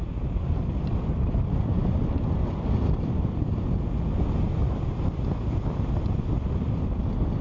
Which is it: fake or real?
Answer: real